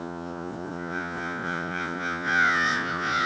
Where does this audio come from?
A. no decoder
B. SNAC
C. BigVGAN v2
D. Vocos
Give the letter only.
D